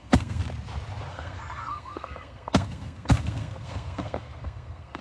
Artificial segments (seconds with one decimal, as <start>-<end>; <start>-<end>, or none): 0.0-0.4; 1.1-5.0